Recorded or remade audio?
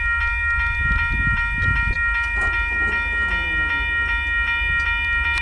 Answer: recorded